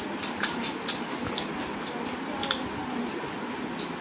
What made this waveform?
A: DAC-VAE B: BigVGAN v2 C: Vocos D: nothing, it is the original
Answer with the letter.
D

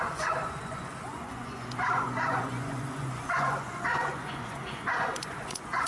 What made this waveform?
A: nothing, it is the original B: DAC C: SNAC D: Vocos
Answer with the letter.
D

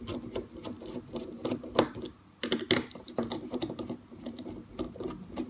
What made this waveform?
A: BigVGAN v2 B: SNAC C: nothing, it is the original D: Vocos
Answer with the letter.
C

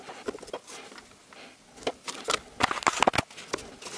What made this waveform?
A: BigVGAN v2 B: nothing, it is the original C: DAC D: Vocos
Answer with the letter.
B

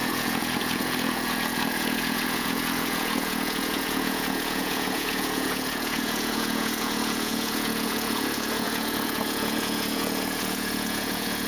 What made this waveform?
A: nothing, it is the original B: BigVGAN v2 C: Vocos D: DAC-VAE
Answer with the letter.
C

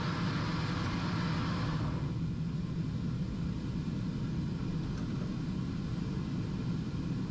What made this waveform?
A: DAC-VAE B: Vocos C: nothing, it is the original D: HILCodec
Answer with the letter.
C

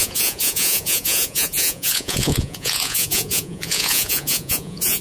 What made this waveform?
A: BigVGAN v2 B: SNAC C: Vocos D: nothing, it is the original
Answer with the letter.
C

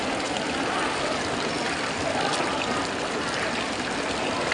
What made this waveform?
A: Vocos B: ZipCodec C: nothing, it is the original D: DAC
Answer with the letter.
C